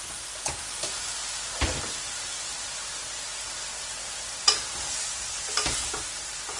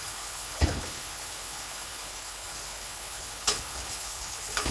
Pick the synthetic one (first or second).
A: second